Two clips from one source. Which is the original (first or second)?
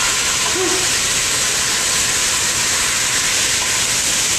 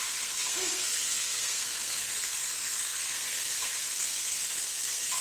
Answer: first